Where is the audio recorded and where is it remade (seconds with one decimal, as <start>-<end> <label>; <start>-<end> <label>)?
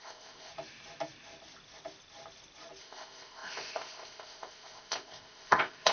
0.0-0.5 remade; 0.5-2.8 recorded; 2.8-5.9 remade